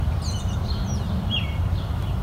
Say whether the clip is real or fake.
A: fake